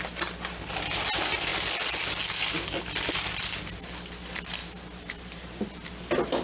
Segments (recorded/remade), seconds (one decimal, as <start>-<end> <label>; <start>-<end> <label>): 0.0-4.6 recorded; 4.6-5.9 remade; 5.9-6.4 recorded